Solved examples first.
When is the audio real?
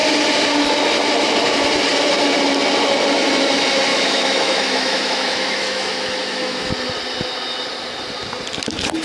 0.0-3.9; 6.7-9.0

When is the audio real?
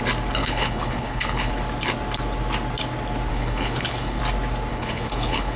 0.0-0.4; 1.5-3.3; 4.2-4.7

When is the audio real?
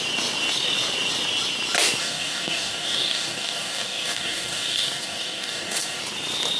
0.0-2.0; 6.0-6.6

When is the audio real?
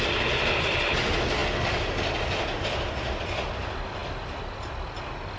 0.0-5.4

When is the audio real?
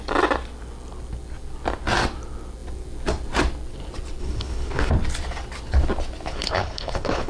0.0-4.2; 4.9-6.3